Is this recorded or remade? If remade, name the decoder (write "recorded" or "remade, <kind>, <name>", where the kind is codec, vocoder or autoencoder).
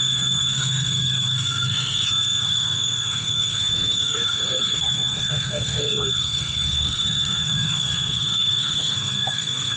remade, codec, SNAC